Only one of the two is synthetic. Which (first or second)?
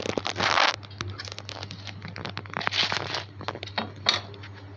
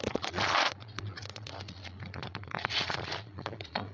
second